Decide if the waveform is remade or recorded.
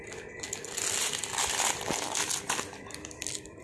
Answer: recorded